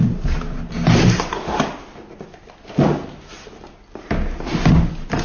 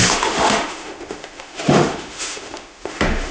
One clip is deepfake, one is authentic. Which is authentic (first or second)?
first